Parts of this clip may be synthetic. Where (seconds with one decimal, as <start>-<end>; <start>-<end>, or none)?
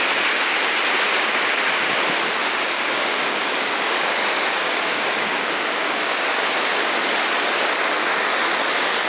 2.4-6.4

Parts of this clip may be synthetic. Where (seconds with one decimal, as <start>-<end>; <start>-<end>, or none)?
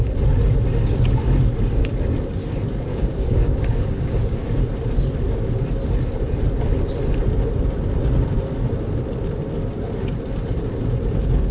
2.9-4.5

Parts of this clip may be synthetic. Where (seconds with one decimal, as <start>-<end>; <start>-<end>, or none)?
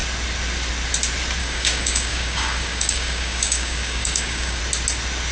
1.4-4.6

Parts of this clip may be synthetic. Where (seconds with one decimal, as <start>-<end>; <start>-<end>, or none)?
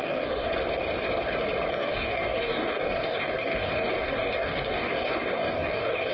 0.0-0.5; 1.7-6.1